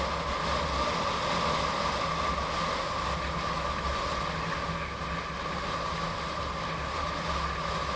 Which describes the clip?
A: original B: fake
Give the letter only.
A